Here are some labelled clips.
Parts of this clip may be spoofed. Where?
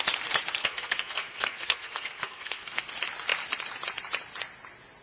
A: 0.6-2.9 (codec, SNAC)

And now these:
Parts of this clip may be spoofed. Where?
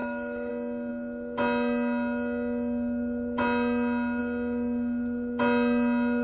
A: 0.0-0.5 (autoencoder, DAC-VAE)